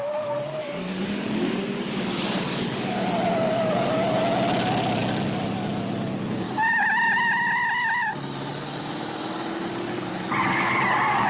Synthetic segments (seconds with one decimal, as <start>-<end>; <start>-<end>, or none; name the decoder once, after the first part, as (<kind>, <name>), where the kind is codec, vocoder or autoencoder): 0.6-4.2 (codec, DAC); 9.7-10.7